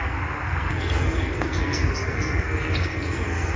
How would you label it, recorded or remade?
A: remade